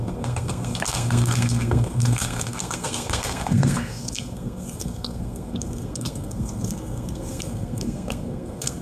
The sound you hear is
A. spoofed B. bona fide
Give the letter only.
A